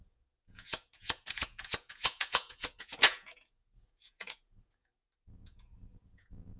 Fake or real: fake